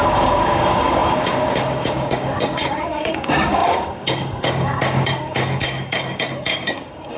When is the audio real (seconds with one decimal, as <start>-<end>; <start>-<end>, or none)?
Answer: none